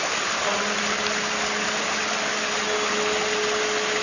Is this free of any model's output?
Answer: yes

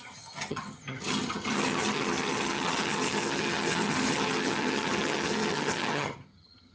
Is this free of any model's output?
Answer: no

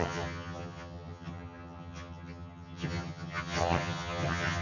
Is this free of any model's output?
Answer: no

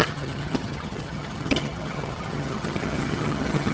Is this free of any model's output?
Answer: no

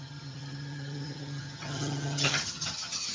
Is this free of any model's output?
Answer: no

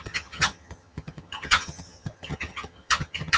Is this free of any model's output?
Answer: no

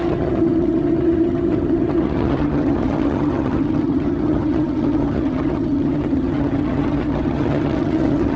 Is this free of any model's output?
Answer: no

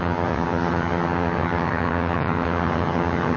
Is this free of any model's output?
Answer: no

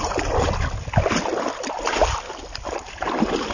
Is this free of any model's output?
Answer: yes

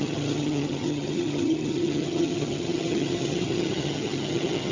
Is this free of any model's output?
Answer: no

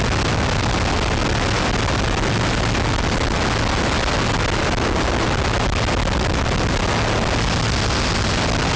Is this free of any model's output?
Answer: yes